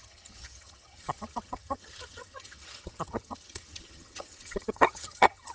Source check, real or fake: fake